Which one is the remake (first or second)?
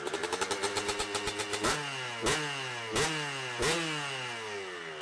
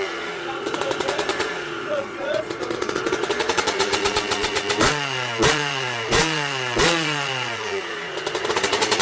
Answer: second